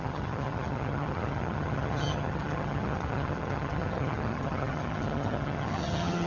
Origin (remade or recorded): remade